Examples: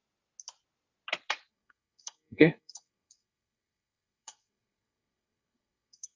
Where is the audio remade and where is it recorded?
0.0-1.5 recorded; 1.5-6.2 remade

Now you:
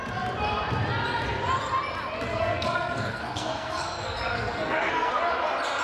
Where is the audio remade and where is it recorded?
0.0-2.3 recorded; 2.3-5.2 remade; 5.2-5.8 recorded

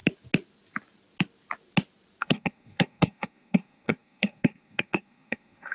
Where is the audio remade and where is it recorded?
0.0-2.2 recorded; 2.2-5.7 remade

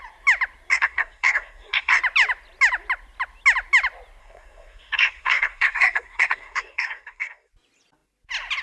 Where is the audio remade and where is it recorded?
0.0-0.7 recorded; 0.7-2.0 remade; 2.0-4.2 recorded; 4.2-7.5 remade; 7.5-8.6 recorded

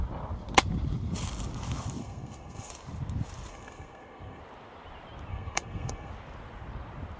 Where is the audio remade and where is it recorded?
0.0-2.0 recorded; 2.0-2.7 remade; 2.7-3.5 recorded; 3.5-4.4 remade; 4.4-5.3 recorded; 5.3-6.1 remade; 6.1-7.2 recorded